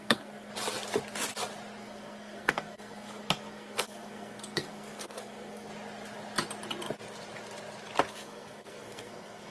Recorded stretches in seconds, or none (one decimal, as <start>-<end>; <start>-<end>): 0.5-1.8; 5.7-8.1